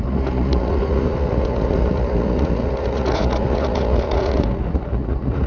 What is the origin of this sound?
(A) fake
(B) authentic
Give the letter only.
A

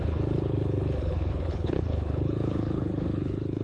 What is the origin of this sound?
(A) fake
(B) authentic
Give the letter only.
A